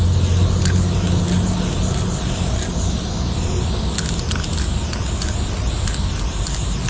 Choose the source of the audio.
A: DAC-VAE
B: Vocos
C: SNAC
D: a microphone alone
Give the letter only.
D